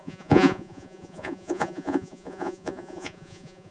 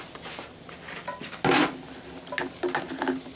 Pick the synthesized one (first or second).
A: first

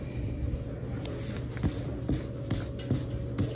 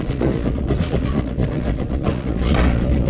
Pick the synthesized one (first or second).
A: second